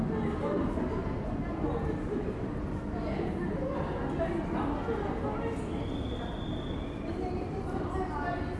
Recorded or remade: recorded